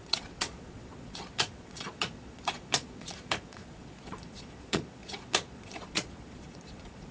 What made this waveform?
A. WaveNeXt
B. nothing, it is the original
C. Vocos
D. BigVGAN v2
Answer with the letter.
C